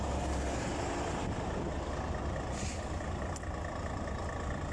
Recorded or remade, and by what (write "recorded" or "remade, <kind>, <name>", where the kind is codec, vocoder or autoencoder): recorded